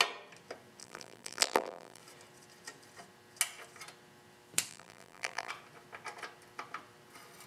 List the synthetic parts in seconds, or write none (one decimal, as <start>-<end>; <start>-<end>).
0.8-2.0; 4.7-5.5